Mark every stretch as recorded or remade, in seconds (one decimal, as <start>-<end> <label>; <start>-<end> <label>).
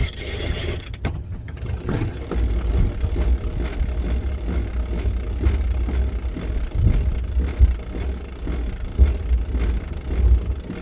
0.0-2.2 remade; 2.2-10.8 recorded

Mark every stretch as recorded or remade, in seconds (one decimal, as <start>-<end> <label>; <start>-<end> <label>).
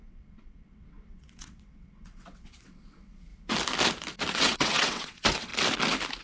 0.0-3.3 remade; 3.3-4.3 recorded; 4.3-5.5 remade; 5.5-6.2 recorded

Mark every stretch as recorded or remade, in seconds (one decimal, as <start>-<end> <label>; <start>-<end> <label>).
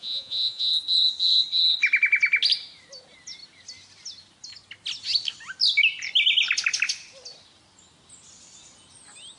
0.0-0.7 remade; 0.7-9.4 recorded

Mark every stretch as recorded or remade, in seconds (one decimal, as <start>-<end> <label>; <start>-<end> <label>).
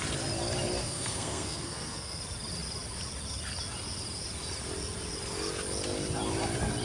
0.0-0.8 recorded; 0.8-2.2 remade; 2.2-6.8 recorded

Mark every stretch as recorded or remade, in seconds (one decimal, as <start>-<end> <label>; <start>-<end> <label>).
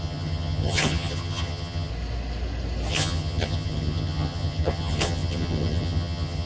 0.0-1.9 remade; 1.9-2.9 recorded; 2.9-6.5 remade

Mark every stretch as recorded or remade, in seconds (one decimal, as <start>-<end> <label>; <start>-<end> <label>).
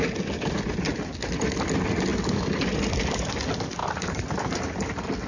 0.0-5.3 recorded